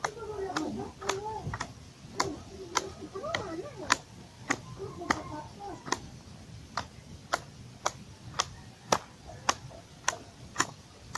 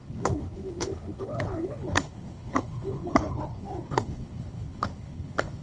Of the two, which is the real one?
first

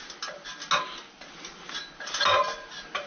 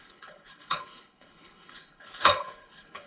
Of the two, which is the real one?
first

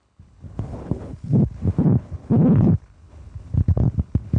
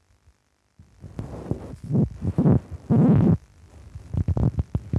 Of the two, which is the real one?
second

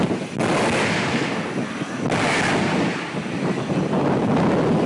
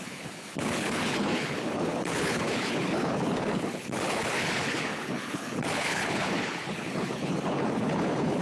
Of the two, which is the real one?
first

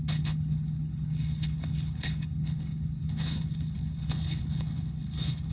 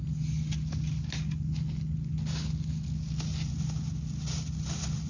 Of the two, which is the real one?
second